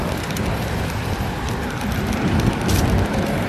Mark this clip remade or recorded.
recorded